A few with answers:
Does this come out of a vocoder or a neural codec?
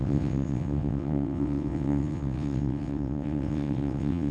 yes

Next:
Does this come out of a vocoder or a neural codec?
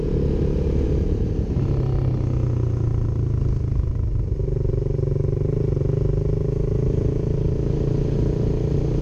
no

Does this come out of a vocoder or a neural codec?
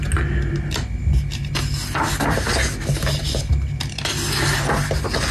no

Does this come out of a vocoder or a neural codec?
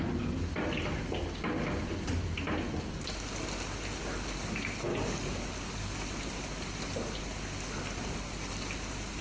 no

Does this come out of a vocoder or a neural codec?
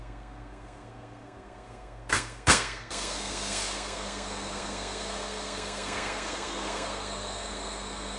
yes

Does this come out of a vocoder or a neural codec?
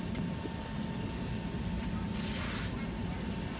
no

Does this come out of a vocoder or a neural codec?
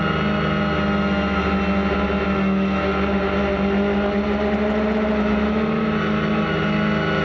no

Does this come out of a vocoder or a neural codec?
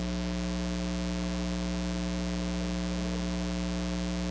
no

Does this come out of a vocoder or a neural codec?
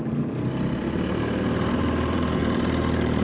yes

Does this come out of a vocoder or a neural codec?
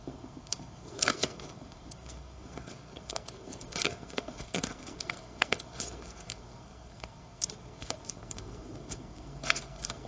yes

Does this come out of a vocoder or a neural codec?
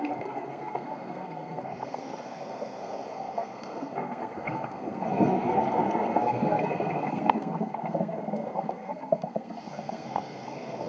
yes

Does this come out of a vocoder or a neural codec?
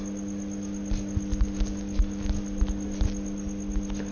no